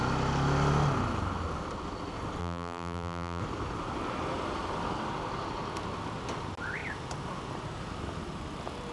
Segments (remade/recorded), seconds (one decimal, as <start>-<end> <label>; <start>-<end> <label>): 0.0-2.4 recorded; 2.4-3.4 remade; 3.4-8.9 recorded